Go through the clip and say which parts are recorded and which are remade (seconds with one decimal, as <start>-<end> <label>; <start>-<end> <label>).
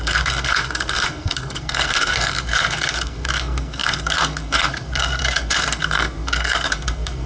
0.0-7.3 remade